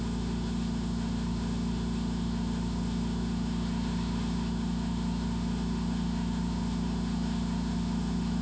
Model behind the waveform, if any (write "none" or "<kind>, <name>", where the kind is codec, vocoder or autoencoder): autoencoder, DAC-VAE